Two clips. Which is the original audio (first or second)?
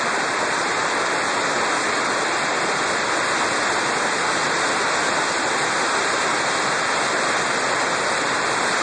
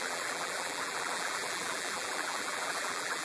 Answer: first